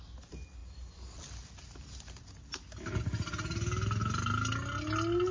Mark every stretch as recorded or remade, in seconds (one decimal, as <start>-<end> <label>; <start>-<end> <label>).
0.0-5.3 recorded